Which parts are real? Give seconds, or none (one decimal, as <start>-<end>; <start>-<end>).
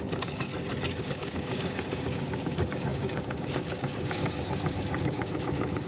0.5-1.0